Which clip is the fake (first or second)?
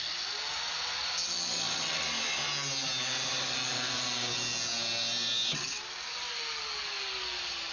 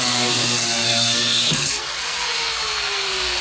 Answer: second